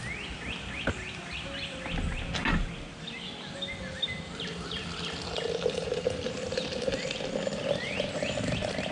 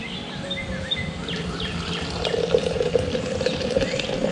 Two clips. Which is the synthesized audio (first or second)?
second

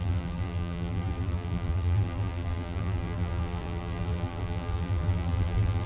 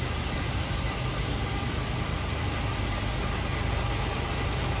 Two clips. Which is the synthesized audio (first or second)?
first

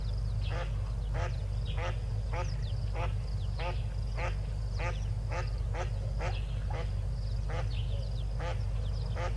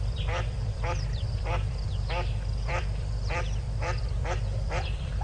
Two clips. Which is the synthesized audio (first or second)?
second